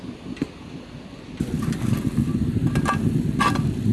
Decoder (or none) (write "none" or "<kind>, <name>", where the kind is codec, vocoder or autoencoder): none